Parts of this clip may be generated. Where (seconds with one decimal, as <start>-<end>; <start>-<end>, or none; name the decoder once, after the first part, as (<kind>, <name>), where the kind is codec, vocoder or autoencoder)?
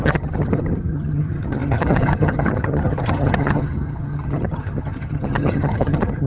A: 0.0-6.3 (vocoder, HiFi-GAN)